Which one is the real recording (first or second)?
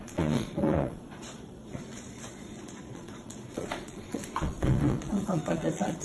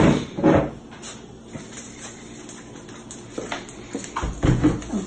second